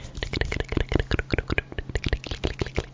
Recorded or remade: recorded